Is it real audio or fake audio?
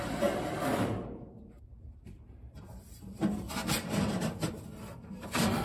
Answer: fake